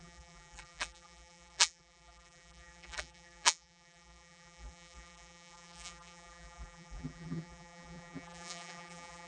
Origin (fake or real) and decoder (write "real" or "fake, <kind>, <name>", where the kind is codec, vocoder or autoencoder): fake, vocoder, BigVGAN v2